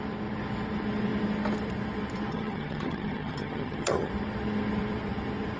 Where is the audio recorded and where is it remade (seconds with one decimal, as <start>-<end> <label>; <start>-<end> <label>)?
0.0-2.3 recorded; 2.3-4.1 remade; 4.1-5.6 recorded